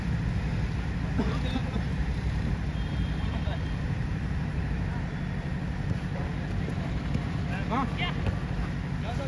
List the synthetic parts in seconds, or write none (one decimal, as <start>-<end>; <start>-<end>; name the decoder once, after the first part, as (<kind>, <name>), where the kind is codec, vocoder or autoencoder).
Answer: 1.6-4.7 (vocoder, BigVGAN v2)